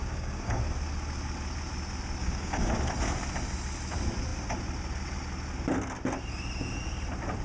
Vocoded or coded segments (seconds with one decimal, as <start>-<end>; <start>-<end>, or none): 0.0-0.6; 2.2-2.7